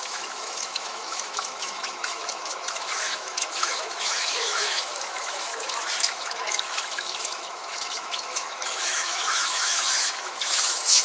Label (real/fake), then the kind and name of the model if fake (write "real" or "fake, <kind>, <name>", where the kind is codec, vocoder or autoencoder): fake, autoencoder, DAC-VAE